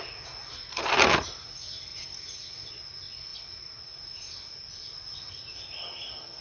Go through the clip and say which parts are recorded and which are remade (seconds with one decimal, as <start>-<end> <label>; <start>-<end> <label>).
0.0-6.4 recorded